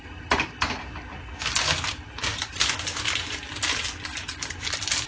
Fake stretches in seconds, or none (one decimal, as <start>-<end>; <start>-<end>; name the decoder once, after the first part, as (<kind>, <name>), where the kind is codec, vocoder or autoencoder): none